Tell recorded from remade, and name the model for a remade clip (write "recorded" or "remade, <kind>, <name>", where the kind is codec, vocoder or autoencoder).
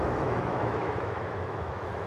remade, autoencoder, DAC-VAE